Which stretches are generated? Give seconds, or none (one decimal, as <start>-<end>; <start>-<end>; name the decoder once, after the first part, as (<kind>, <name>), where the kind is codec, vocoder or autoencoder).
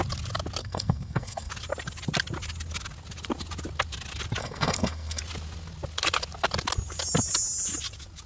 0.6-1.5 (codec, SNAC); 4.4-5.2